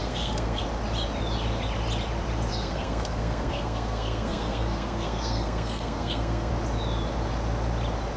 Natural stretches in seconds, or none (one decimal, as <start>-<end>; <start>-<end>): 0.6-2.5; 6.5-8.2